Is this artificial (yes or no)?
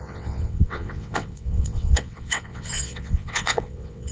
yes